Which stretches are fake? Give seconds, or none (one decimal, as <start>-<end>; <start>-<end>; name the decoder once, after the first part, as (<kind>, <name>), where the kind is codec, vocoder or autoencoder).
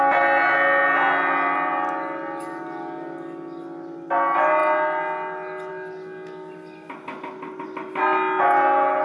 none